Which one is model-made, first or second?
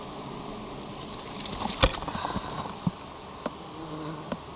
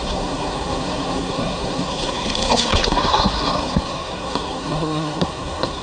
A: second